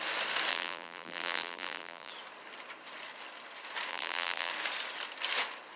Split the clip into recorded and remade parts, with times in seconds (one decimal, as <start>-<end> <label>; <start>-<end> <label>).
0.0-0.5 recorded; 0.5-2.1 remade; 2.1-3.9 recorded; 3.9-4.5 remade; 4.5-5.8 recorded